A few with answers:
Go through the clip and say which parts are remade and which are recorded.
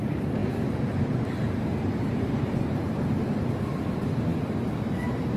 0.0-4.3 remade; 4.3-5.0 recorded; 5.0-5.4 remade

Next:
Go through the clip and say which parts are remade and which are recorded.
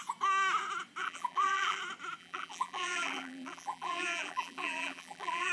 0.0-1.0 recorded; 1.0-1.8 remade; 1.8-2.2 recorded; 2.2-5.5 remade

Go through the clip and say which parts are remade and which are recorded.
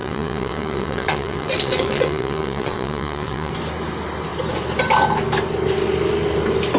0.0-3.5 remade; 3.5-6.8 recorded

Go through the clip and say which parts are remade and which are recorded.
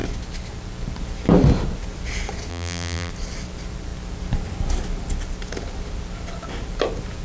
0.0-2.5 recorded; 2.5-3.1 remade; 3.1-7.2 recorded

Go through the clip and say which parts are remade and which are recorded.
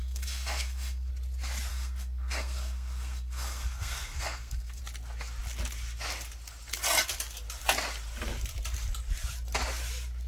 0.0-1.1 remade; 1.1-1.7 recorded; 1.7-4.8 remade; 4.8-10.3 recorded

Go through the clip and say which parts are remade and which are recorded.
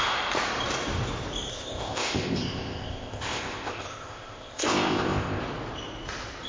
0.0-1.5 recorded; 1.5-5.4 remade; 5.4-6.5 recorded